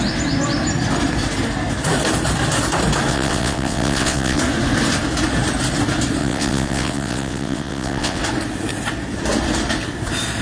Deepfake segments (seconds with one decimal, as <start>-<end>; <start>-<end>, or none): 3.1-4.4; 6.2-8.2